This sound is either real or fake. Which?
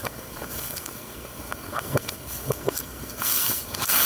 fake